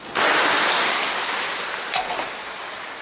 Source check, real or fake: real